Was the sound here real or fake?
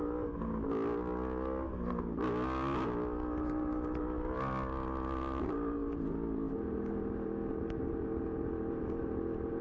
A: real